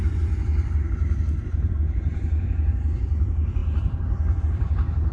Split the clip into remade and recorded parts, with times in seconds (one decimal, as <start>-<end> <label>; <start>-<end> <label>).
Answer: 0.0-5.1 remade